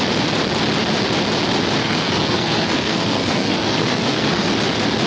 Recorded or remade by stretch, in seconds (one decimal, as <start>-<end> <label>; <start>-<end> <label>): 0.0-1.8 recorded; 1.8-4.5 remade; 4.5-5.1 recorded